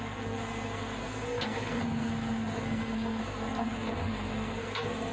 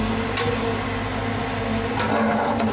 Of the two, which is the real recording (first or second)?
second